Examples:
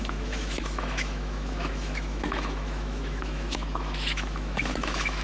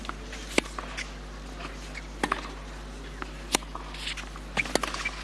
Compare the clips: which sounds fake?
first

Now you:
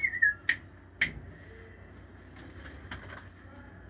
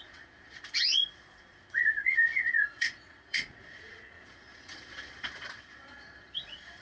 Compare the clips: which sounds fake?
second